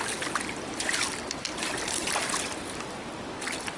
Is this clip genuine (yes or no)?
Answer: yes